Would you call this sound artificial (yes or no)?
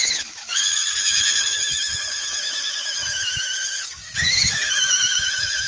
yes